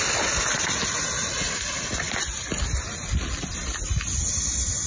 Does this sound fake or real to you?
real